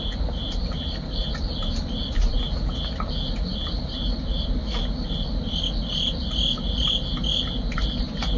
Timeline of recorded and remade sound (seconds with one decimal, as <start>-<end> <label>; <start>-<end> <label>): 0.0-3.5 recorded; 3.5-4.2 remade; 4.2-8.4 recorded